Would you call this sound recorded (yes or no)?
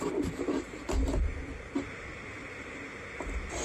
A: yes